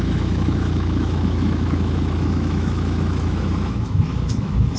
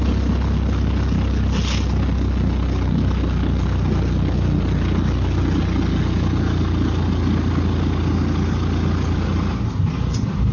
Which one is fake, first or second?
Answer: first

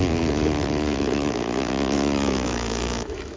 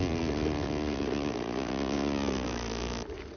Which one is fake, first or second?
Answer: first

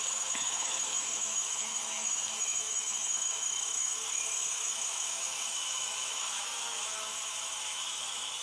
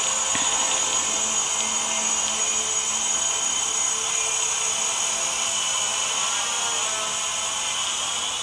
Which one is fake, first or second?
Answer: first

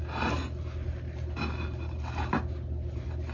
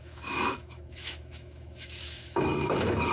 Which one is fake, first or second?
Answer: second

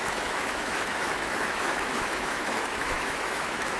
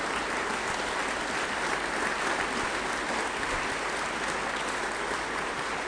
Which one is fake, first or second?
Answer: first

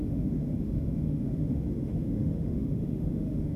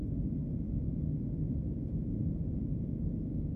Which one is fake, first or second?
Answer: first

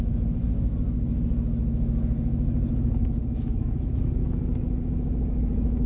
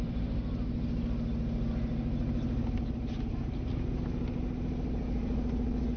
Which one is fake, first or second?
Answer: first